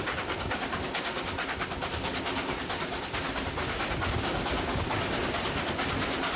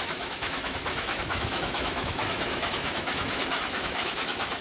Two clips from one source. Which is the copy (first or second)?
second